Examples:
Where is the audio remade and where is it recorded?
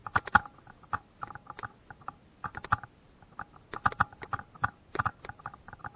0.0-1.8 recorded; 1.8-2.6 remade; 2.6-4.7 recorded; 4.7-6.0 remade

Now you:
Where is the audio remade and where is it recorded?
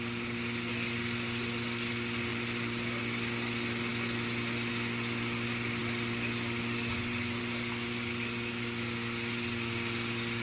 0.0-2.3 recorded; 2.3-3.0 remade; 3.0-10.4 recorded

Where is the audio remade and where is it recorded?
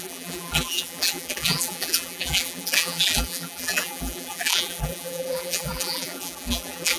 0.0-7.0 remade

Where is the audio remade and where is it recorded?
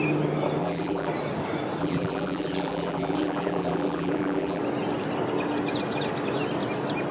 0.0-0.6 recorded; 0.6-1.1 remade; 1.1-1.8 recorded; 1.8-4.6 remade; 4.6-7.1 recorded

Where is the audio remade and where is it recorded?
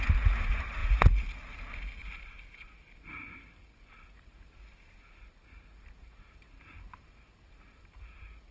0.0-8.5 recorded